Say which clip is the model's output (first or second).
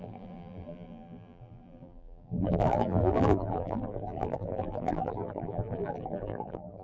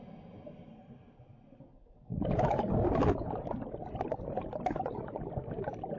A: first